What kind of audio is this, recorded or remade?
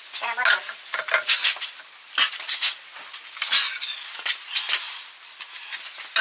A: recorded